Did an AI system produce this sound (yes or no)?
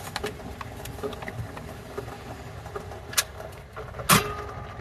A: no